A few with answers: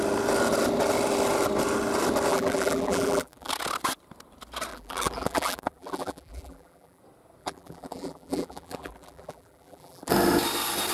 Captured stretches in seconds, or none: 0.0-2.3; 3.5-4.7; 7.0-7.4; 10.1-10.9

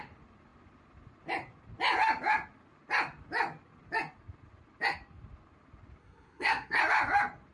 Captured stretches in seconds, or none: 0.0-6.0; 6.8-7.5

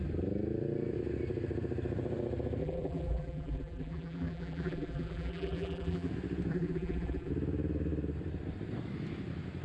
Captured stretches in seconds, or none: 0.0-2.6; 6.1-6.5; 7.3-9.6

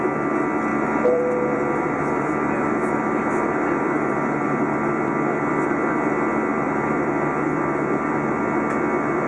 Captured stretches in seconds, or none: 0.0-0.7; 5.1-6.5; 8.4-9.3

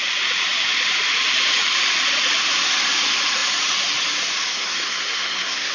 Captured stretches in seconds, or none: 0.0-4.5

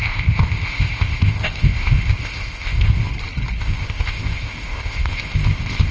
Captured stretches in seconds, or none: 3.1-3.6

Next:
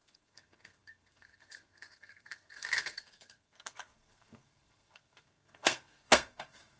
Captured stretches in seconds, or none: none

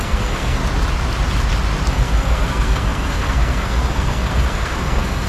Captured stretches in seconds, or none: 0.6-1.9